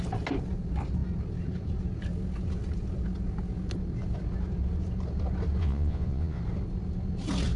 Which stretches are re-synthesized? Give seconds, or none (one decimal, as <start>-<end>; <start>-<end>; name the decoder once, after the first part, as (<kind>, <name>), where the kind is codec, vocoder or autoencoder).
5.6-6.4 (vocoder, Vocos)